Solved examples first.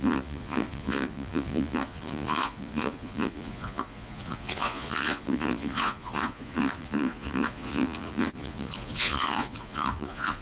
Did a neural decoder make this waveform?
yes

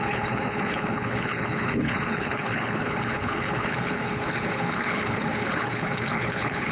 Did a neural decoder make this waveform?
yes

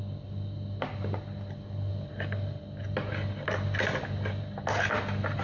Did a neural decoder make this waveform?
no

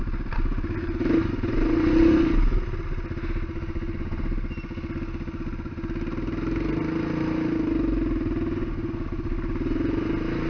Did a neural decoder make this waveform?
no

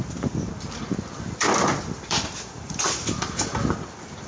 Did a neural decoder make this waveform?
yes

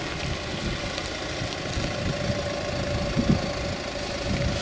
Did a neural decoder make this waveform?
no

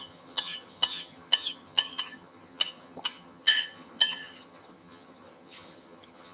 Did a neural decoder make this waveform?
yes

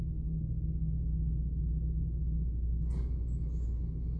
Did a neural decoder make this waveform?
no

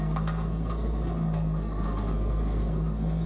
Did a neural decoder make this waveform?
yes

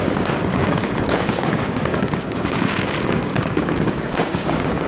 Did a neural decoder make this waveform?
yes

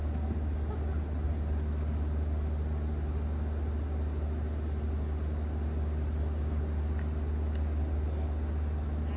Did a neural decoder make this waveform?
no